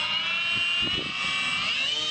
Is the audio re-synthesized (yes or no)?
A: no